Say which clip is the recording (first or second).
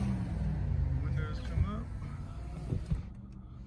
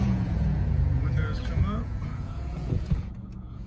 first